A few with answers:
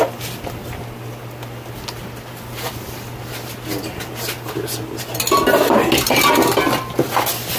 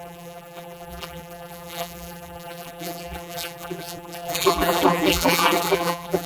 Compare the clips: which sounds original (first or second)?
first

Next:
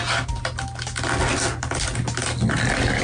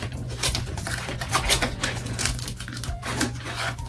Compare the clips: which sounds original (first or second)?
first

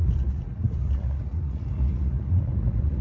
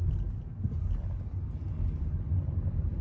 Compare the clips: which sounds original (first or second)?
second